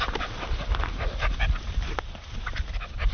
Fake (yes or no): no